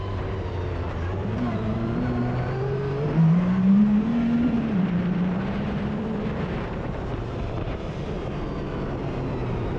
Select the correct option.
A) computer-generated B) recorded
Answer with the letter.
A